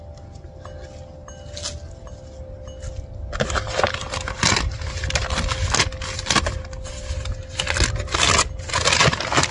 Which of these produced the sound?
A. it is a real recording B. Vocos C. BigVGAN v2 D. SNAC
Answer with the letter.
A